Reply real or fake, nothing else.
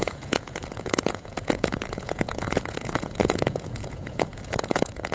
fake